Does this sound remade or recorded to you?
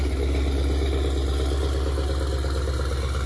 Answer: recorded